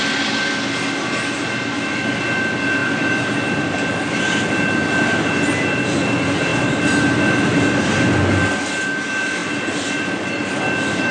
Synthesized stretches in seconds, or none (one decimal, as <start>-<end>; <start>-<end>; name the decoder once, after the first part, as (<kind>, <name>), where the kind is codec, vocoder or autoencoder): none